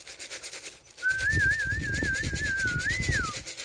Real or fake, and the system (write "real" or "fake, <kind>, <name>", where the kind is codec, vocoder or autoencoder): real